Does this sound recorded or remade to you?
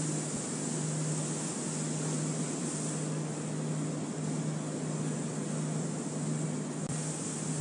recorded